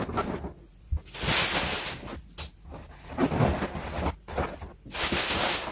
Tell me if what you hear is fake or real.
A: real